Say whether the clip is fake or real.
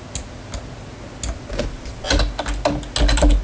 real